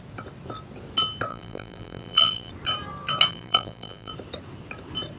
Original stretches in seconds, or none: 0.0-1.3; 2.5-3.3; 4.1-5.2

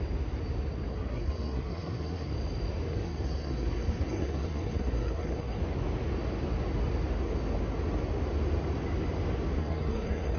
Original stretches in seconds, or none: 0.0-0.9; 2.3-2.9; 5.6-9.6

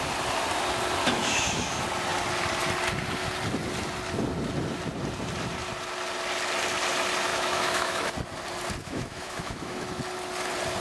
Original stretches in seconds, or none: 0.0-1.0; 1.7-7.3; 8.1-8.8; 10.0-10.8

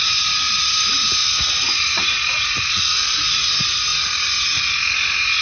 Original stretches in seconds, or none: 0.0-1.2; 3.5-5.4

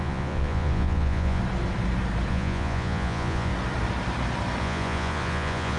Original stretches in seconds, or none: 1.4-2.3; 3.5-4.6

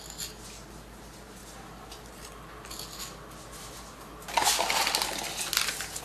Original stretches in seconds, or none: 0.0-6.0

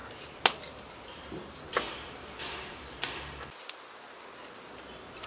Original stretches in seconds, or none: 0.0-5.3